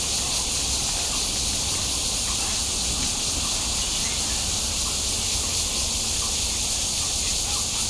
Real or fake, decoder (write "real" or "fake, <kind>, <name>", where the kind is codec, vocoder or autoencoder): real